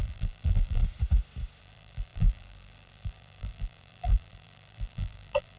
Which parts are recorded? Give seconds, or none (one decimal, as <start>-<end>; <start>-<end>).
0.8-1.6